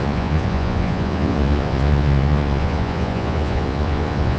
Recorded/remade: remade